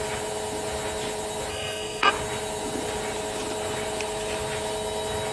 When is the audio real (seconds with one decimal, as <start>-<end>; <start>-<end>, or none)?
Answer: 0.0-1.5; 2.1-5.3